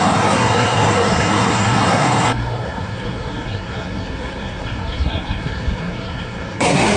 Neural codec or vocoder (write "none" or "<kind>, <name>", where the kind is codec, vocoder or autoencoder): codec, SNAC